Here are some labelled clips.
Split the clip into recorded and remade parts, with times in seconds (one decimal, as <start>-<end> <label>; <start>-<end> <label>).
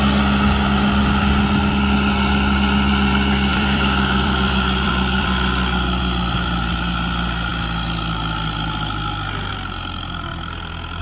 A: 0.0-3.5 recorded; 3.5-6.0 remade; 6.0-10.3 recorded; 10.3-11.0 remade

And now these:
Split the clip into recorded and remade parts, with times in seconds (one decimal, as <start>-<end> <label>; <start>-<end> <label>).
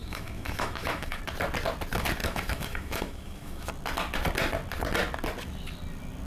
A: 0.0-1.2 remade; 1.2-2.2 recorded; 2.2-3.7 remade; 3.7-6.3 recorded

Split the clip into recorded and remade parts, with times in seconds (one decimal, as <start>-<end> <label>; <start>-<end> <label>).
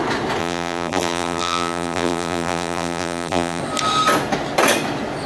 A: 0.0-0.4 recorded; 0.4-3.6 remade; 3.6-5.3 recorded